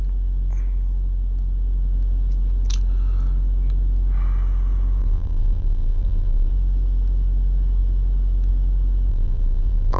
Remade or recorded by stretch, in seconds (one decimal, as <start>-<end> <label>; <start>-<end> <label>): 0.0-5.0 recorded; 5.0-6.5 remade; 6.5-9.1 recorded; 9.1-10.0 remade